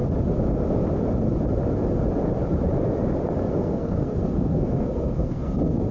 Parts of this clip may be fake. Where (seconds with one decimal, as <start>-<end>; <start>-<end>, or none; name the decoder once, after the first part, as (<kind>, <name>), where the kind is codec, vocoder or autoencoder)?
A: 3.5-5.9 (codec, SNAC)